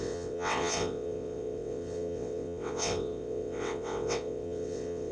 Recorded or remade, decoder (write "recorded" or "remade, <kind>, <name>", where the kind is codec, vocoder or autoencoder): remade, vocoder, WaveNeXt